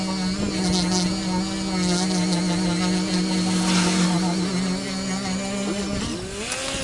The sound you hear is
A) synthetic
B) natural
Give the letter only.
B